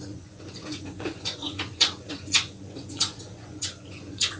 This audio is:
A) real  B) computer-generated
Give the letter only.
B